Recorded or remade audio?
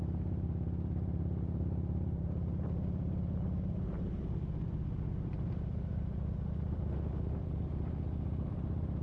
remade